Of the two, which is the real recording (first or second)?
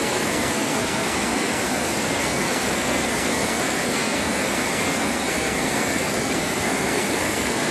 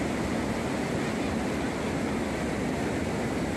second